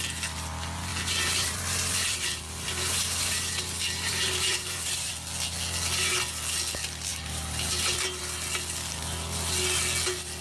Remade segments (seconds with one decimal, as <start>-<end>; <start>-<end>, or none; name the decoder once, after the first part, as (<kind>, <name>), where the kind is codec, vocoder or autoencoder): 0.9-5.1 (vocoder, BigVGAN v2); 7.1-8.2